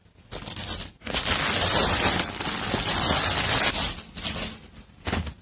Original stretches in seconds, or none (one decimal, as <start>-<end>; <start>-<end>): 0.0-5.4